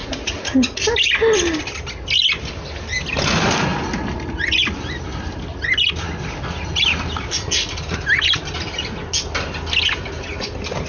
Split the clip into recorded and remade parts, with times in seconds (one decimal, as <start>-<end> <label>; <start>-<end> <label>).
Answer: 0.0-0.8 remade; 0.8-10.9 recorded